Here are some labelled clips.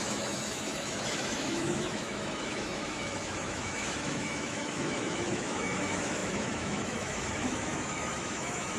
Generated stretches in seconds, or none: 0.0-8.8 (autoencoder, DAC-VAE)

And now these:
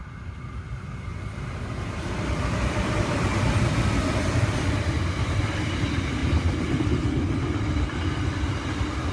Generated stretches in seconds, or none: 1.1-3.2 (vocoder, BigVGAN v2); 6.2-6.8

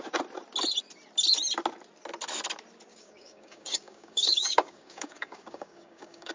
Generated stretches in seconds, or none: 2.9-6.3 (codec, DAC)

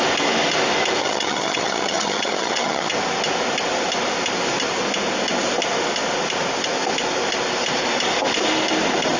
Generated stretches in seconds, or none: 1.0-2.9 (vocoder, HiFi-GAN)

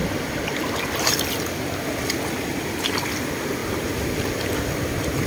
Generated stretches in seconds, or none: none